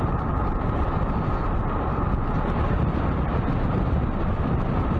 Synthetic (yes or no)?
no